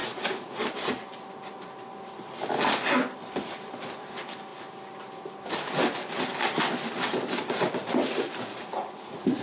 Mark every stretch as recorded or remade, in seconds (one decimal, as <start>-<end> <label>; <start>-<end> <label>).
0.0-0.6 remade; 0.6-8.5 recorded; 8.5-9.4 remade